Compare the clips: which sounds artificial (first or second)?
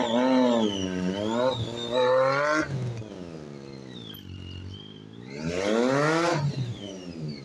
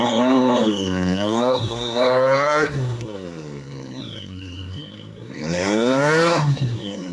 second